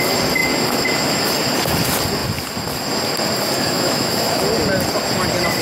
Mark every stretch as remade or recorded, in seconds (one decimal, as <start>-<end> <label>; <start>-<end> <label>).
0.0-3.6 recorded; 3.6-4.4 remade; 4.4-5.6 recorded

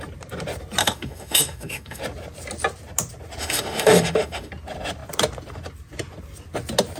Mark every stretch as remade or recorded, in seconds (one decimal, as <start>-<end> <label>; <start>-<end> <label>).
0.0-0.8 recorded; 0.8-2.0 remade; 2.0-3.4 recorded; 3.4-4.5 remade; 4.5-7.0 recorded

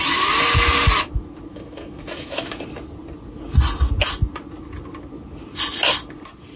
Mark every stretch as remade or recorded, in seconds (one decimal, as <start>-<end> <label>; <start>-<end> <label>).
0.0-1.5 recorded; 1.5-2.5 remade; 2.5-6.6 recorded

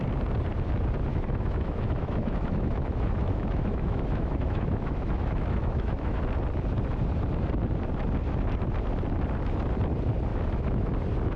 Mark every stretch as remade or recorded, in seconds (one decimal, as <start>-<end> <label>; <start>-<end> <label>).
0.0-1.1 recorded; 1.1-6.2 remade; 6.2-10.3 recorded; 10.3-10.9 remade; 10.9-11.4 recorded

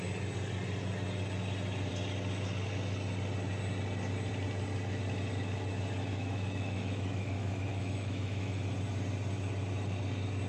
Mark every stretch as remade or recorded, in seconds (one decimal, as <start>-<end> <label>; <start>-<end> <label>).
0.0-6.1 recorded; 6.1-8.6 remade; 8.6-10.5 recorded

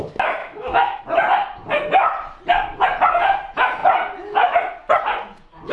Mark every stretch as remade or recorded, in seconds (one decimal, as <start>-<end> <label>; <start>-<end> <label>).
0.0-0.4 recorded; 0.4-1.0 remade; 1.0-5.7 recorded

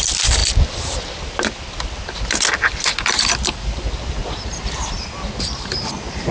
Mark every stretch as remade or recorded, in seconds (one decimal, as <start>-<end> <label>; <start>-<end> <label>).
0.0-6.3 recorded

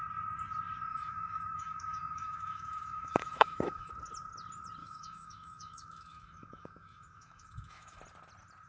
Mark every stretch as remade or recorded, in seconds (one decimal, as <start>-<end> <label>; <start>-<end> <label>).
0.0-0.9 recorded; 0.9-3.9 remade; 3.9-4.8 recorded; 4.8-8.0 remade; 8.0-8.7 recorded